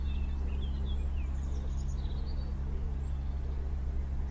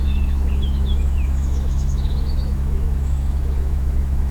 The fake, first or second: second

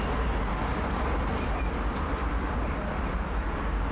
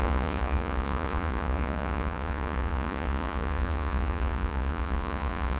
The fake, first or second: second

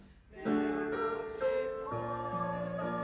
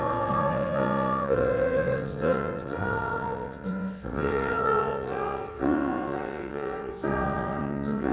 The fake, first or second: second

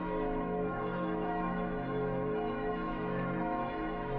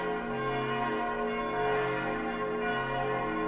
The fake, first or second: first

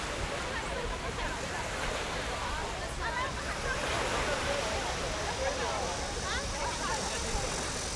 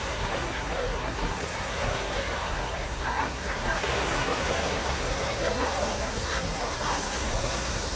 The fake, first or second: second